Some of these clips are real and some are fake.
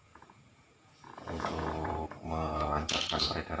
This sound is fake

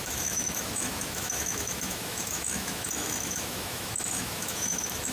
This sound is fake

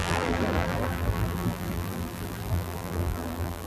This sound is fake